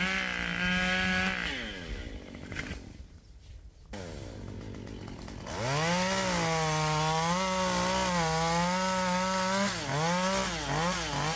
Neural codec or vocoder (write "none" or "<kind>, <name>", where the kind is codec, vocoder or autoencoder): none